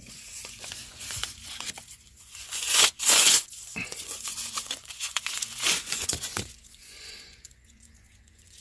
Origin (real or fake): fake